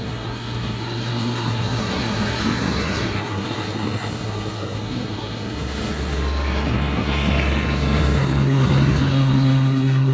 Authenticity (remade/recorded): remade